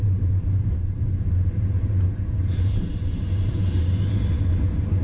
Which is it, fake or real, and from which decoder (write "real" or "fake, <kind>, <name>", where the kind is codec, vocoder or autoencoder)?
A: fake, vocoder, BigVGAN v2